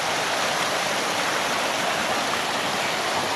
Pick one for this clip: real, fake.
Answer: real